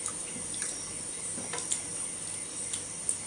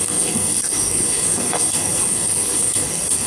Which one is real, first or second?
first